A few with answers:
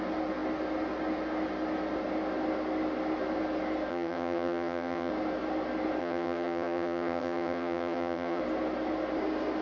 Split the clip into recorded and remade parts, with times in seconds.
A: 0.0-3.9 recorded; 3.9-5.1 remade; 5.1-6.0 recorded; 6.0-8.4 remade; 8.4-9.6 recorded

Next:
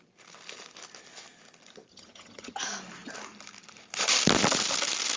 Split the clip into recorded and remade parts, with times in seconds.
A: 0.0-1.9 recorded; 1.9-2.6 remade; 2.6-5.2 recorded

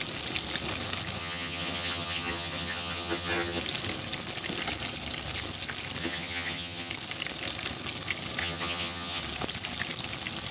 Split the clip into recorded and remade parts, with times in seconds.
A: 0.0-1.2 recorded; 1.2-3.6 remade; 3.6-6.0 recorded; 6.0-6.9 remade; 6.9-8.4 recorded; 8.4-9.2 remade; 9.2-10.5 recorded

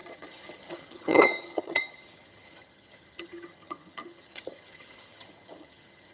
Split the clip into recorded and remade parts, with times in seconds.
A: 0.0-6.1 remade

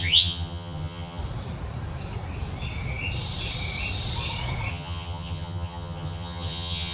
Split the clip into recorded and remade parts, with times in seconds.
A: 0.0-1.2 remade; 1.2-4.7 recorded; 4.7-6.9 remade

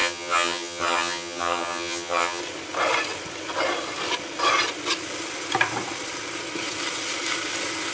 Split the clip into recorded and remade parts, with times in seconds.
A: 0.0-2.4 remade; 2.4-7.9 recorded